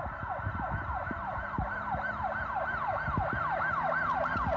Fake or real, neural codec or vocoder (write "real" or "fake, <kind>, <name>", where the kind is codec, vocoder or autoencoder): real